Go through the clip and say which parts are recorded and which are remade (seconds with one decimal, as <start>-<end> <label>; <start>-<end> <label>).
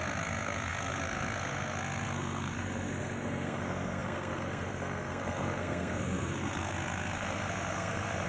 0.0-8.3 remade